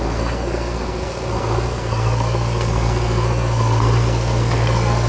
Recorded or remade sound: remade